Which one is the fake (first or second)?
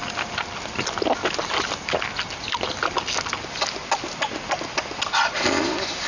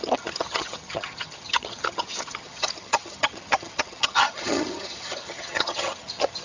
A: second